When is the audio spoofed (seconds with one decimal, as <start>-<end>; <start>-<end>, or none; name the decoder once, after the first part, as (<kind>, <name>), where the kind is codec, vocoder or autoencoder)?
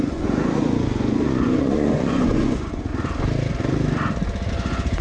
0.0-2.9 (vocoder, Vocos); 4.5-5.0